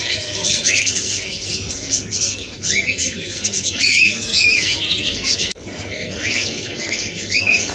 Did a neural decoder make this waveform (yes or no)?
yes